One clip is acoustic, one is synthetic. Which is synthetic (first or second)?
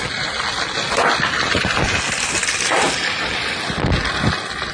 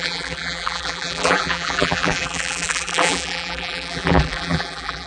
second